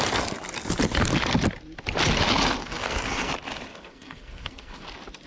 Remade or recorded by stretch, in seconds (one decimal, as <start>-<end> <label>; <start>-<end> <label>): 0.0-2.6 recorded; 2.6-3.3 remade; 3.3-3.7 recorded; 3.7-4.8 remade; 4.8-5.3 recorded